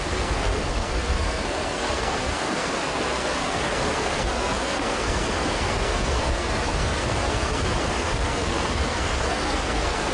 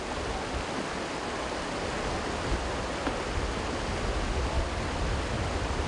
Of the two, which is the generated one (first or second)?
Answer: first